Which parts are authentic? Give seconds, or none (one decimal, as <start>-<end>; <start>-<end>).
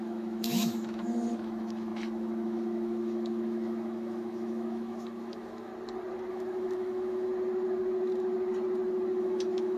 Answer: 5.7-6.3; 7.3-9.2